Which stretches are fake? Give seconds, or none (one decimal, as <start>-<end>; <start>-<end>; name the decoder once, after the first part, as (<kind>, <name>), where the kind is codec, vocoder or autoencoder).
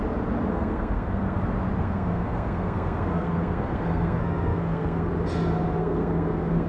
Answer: 0.5-1.4 (codec, SNAC); 1.8-5.1; 5.8-6.7